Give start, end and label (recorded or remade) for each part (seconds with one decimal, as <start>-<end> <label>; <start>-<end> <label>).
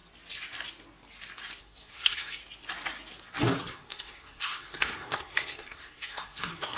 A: 0.0-1.6 recorded; 1.6-2.4 remade; 2.4-3.6 recorded; 3.6-6.8 remade